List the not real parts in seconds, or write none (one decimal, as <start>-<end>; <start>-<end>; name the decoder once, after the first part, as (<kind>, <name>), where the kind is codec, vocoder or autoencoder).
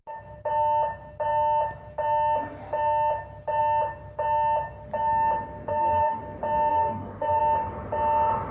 5.7-6.2 (codec, DAC); 6.7-7.4